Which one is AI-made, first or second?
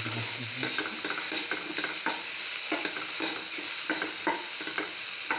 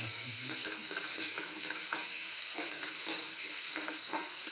second